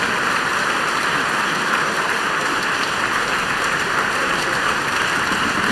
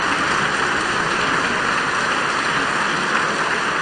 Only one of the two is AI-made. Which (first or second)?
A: first